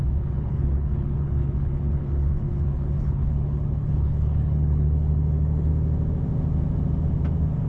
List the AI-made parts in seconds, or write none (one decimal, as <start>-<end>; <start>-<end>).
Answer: 0.0-5.7